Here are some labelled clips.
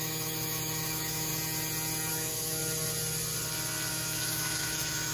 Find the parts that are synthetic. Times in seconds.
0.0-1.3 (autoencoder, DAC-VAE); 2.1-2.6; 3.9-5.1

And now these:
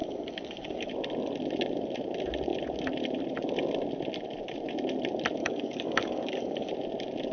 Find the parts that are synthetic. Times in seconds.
0.0-0.9 (codec, DAC); 5.4-6.7

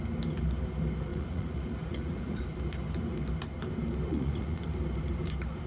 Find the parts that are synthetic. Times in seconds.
1.1-2.4 (vocoder, Vocos); 4.1-4.6

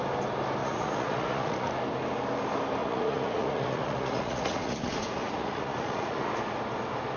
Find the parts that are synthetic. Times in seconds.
0.6-1.7 (vocoder, Vocos); 2.8-6.3

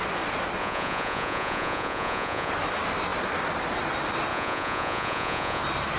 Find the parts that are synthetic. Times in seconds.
0.6-2.5 (vocoder, Vocos); 4.3-5.6

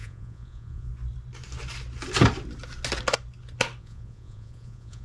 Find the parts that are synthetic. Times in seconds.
0.0-0.9 (vocoder, Vocos); 3.8-5.0